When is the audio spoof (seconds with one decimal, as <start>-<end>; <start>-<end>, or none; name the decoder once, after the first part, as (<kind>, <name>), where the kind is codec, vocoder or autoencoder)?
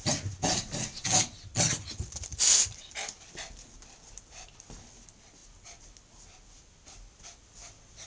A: none